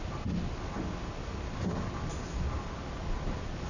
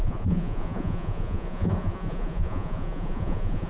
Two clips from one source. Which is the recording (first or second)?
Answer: first